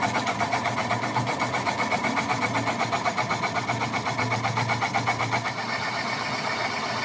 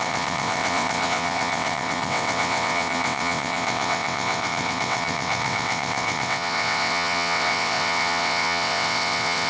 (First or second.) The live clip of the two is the first